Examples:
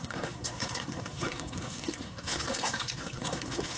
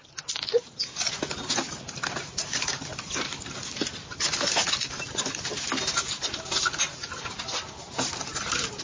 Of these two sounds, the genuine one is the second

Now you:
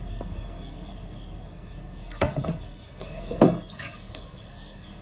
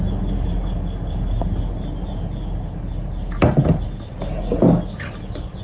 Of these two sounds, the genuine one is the second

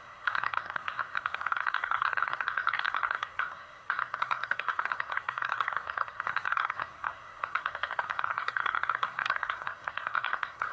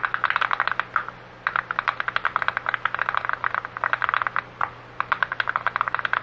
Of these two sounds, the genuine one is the second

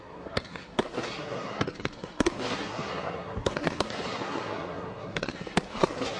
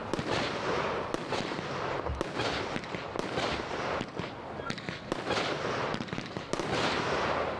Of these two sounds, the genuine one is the second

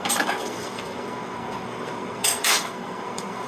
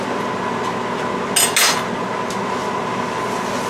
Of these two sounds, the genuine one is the second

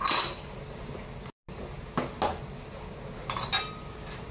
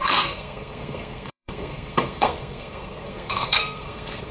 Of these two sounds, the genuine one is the first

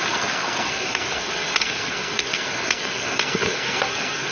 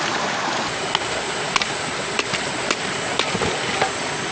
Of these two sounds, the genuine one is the second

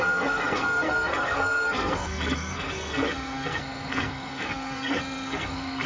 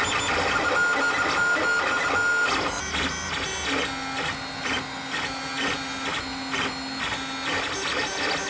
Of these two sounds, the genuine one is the second